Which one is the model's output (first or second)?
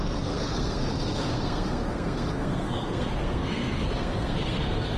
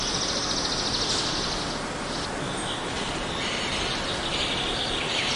first